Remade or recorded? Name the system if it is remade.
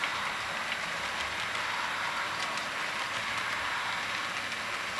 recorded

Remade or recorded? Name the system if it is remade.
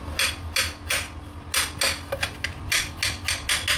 recorded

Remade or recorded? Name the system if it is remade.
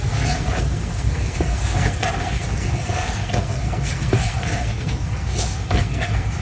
remade, codec, SNAC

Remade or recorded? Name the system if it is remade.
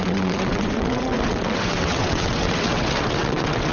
remade, vocoder, WaveNeXt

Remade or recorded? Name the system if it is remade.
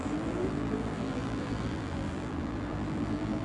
remade, vocoder, BigVGAN v2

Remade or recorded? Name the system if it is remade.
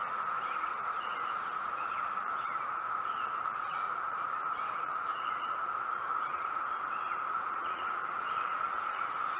remade, vocoder, Vocos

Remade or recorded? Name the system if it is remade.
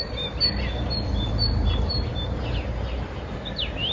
recorded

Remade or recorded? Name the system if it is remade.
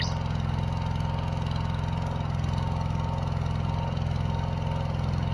recorded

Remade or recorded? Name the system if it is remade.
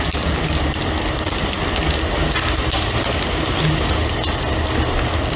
recorded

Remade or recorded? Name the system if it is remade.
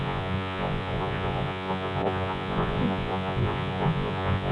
remade, vocoder, Vocos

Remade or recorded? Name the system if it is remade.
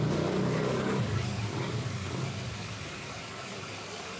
remade, codec, DAC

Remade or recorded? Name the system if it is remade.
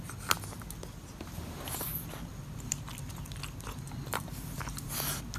recorded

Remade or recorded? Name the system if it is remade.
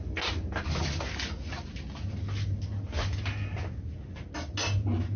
recorded